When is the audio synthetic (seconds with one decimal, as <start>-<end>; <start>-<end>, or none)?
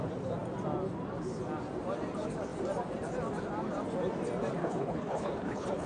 4.6-5.9